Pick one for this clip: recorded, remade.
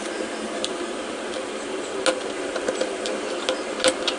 recorded